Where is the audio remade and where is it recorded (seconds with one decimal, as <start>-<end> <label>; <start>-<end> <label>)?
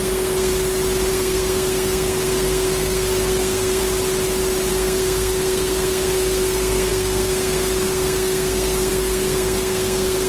0.0-0.5 remade; 0.5-1.1 recorded; 1.1-3.8 remade; 3.8-4.7 recorded; 4.7-10.3 remade